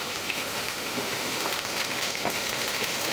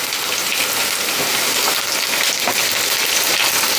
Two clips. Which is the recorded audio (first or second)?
second